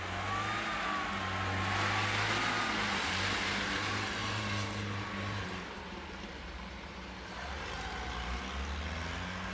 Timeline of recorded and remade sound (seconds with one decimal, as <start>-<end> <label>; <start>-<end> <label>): 0.0-4.2 recorded; 4.2-8.4 remade; 8.4-9.5 recorded